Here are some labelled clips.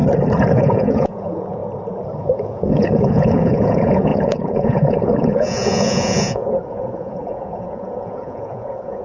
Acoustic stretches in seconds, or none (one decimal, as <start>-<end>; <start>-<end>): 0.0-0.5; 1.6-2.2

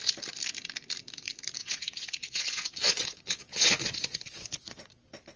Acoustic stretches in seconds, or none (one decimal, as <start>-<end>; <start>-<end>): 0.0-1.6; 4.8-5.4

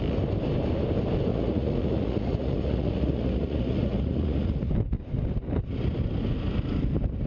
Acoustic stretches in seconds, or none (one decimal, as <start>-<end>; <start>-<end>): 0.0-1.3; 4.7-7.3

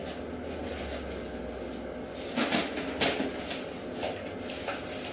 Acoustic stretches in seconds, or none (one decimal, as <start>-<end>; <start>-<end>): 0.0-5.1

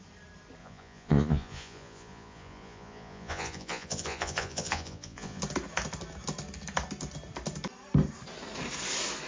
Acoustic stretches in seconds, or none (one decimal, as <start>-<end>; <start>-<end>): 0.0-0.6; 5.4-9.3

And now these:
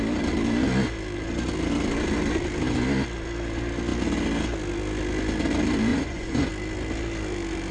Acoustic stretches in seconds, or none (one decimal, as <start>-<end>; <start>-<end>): 0.0-5.9; 6.5-7.7

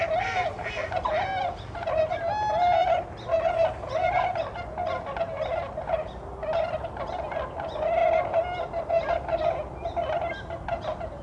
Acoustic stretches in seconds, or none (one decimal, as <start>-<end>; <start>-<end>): 0.0-11.2